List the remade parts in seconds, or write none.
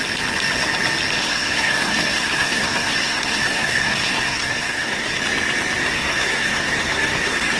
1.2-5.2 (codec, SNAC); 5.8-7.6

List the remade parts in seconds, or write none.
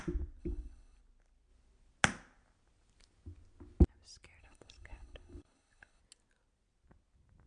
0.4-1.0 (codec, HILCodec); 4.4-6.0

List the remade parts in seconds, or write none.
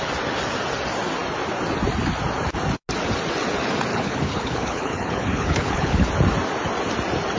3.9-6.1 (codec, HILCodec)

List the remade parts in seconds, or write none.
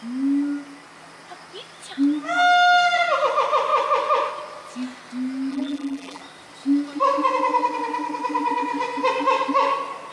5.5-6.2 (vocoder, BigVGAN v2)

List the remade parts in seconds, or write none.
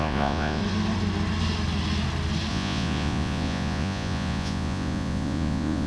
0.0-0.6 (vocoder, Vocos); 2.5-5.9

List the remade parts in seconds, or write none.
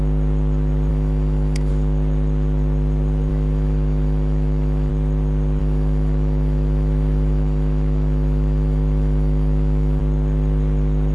0.9-1.7 (autoencoder, DAC-VAE); 3.3-4.9; 5.6-10.0